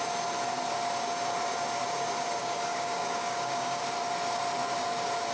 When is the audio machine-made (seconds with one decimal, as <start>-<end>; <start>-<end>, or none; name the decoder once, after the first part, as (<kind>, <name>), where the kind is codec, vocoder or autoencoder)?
2.4-3.8 (codec, DAC)